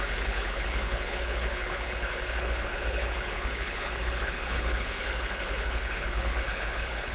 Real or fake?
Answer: fake